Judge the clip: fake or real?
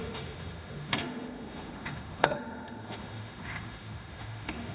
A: fake